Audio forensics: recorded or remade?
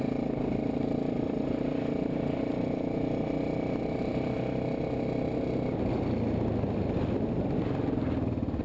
recorded